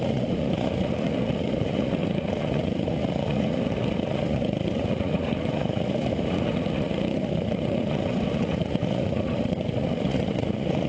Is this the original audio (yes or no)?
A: no